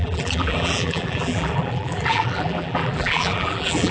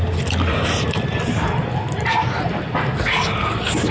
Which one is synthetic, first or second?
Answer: first